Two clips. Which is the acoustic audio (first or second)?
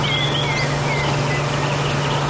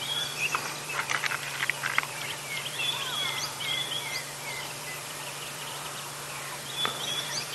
first